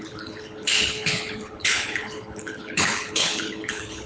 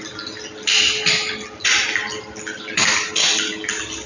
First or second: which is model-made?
first